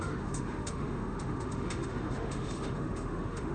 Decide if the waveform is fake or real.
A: fake